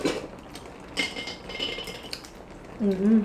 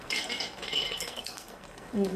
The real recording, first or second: first